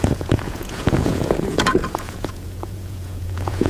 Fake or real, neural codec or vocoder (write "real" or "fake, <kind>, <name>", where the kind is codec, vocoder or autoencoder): fake, vocoder, Vocos